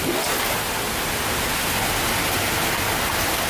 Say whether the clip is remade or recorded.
recorded